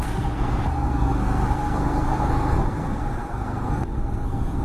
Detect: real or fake fake